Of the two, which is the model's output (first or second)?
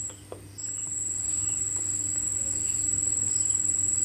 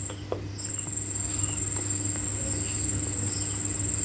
second